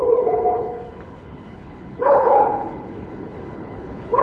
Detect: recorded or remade remade